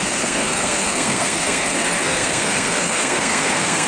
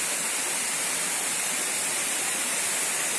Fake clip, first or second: first